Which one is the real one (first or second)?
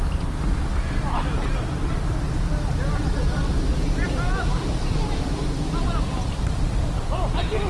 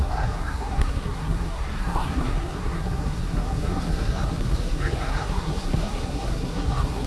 first